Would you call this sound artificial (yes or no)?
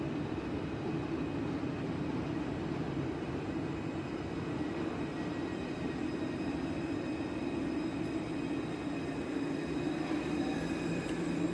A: no